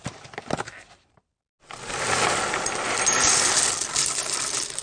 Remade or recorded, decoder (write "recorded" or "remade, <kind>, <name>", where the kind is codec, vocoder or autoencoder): recorded